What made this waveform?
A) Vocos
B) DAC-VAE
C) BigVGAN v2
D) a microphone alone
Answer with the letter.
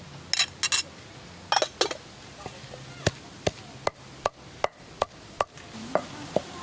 D